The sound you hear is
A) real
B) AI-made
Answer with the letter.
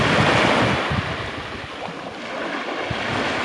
A